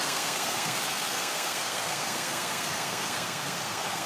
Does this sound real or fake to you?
fake